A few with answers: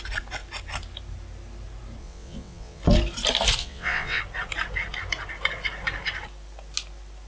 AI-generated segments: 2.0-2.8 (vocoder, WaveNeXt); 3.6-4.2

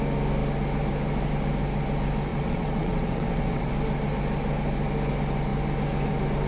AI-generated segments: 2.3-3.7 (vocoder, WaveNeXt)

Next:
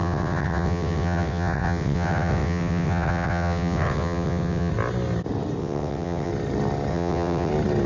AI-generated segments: 0.0-4.7 (vocoder, WaveNeXt); 5.6-6.3; 6.9-7.5

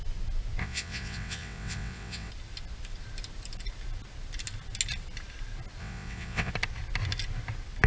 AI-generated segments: 0.6-2.3 (vocoder, WaveNeXt); 5.8-6.5

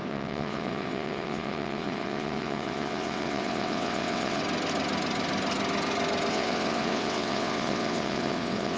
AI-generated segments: 0.0-4.4 (vocoder, WaveNeXt); 6.3-8.8

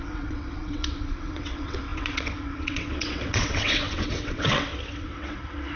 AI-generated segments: 0.0-5.8 (vocoder, WaveNeXt)